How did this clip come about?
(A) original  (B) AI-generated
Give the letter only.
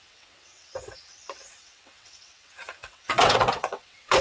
B